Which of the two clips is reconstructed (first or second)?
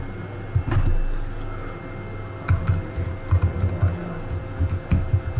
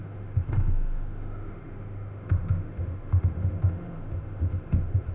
second